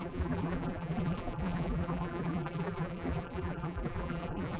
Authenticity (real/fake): fake